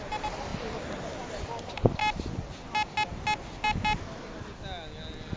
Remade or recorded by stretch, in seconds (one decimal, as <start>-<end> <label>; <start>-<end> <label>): 0.0-5.4 recorded